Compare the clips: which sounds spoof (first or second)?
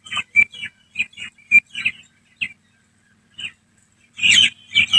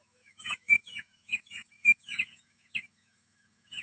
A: second